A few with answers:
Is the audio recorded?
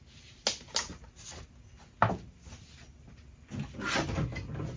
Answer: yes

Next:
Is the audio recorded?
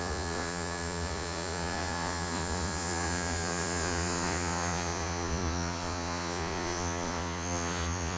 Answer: no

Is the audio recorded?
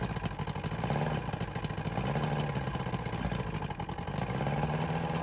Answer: yes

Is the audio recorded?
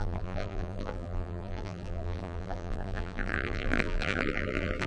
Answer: no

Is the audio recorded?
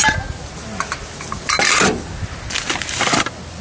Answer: yes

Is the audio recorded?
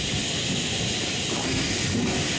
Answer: yes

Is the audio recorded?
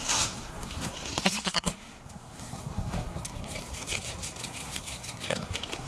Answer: no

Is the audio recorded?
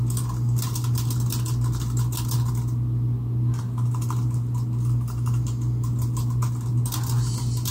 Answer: yes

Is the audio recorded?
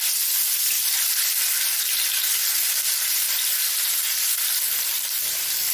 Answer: no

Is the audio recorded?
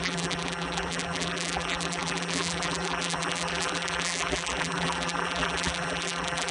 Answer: no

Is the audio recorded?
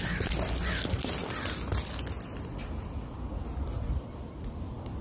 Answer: yes